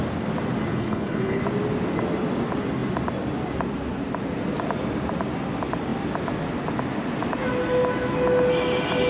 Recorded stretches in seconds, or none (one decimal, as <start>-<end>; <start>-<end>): 0.0-0.7; 1.4-9.1

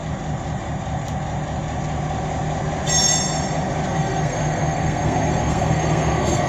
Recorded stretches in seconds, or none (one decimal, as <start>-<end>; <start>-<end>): 0.0-3.9

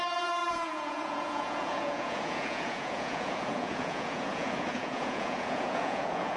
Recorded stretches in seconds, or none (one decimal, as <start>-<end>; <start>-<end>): none

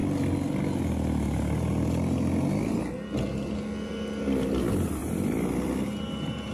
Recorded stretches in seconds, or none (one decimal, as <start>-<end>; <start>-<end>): 0.0-6.5

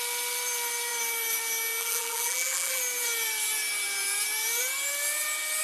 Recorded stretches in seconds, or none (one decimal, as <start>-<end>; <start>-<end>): 0.0-1.8; 2.8-5.6

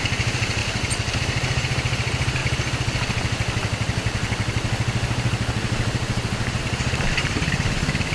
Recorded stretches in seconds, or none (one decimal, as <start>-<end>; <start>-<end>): 0.6-1.2; 2.4-6.6

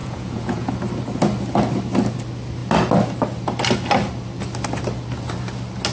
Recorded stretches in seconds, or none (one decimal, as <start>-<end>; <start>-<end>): 0.7-5.9